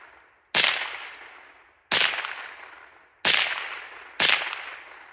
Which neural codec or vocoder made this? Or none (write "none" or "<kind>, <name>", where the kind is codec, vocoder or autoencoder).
none